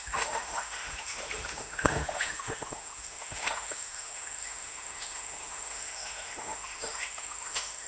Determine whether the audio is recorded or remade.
remade